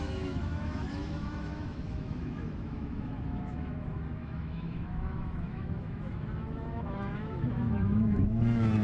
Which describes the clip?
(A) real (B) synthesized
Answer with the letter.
B